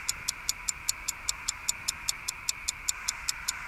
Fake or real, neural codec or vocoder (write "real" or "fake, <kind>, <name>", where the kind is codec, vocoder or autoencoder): real